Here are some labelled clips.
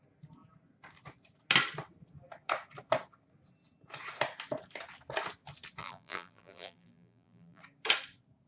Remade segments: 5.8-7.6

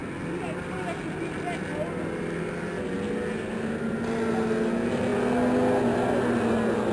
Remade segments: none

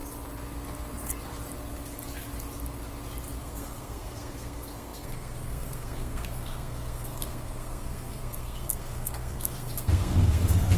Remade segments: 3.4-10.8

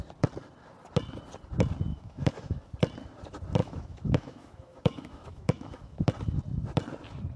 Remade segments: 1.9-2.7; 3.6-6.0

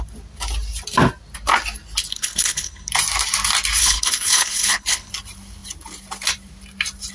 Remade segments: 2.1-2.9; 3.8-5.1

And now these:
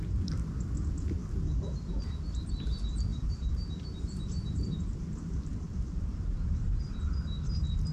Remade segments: 3.1-7.0

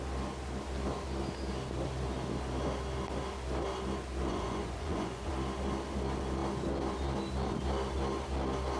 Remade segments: 4.3-5.3